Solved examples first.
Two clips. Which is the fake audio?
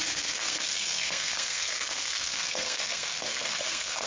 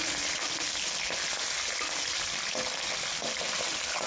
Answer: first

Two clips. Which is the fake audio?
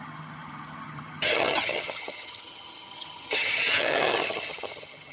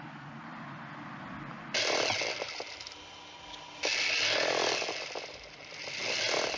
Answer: first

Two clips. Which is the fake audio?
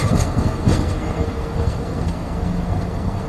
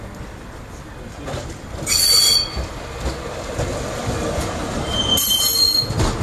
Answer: first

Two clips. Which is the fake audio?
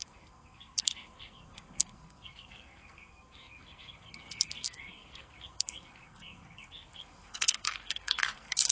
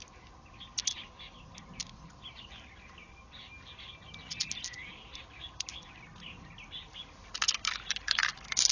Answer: first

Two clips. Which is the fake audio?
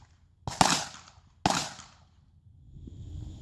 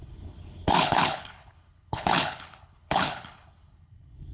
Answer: second